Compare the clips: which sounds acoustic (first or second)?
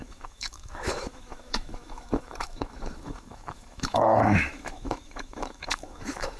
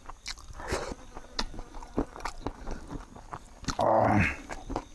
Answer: second